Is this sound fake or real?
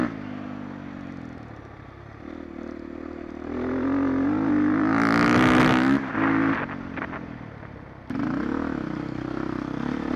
real